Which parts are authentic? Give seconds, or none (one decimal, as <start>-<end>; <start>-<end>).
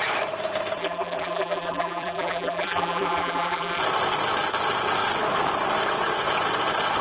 0.0-0.8; 3.8-7.0